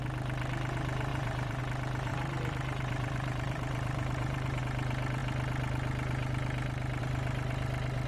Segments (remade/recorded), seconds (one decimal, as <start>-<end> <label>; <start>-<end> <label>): 0.0-1.1 recorded; 1.1-1.6 remade; 1.6-2.1 recorded; 2.1-4.6 remade; 4.6-8.1 recorded